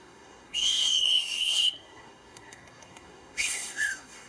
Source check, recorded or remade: remade